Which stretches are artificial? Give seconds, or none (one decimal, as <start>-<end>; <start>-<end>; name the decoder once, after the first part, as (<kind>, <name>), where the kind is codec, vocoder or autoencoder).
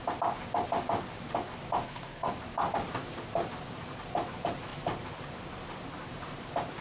1.8-2.3 (codec, SNAC)